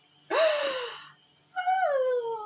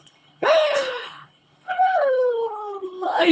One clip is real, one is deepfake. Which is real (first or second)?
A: first